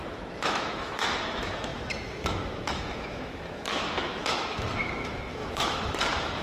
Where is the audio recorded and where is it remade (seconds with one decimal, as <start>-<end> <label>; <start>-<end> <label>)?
0.0-6.4 remade